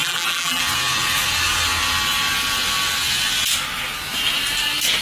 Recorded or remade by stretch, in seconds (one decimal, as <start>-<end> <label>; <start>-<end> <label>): 0.0-0.6 remade; 0.6-5.0 recorded